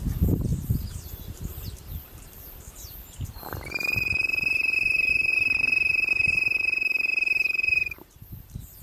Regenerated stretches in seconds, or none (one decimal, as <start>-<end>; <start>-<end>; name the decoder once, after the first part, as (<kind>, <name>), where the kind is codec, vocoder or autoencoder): 0.0-8.8 (vocoder, BigVGAN v2)